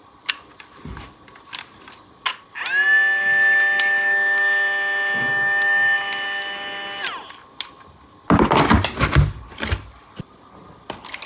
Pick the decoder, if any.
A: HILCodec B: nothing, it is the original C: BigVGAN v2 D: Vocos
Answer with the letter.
B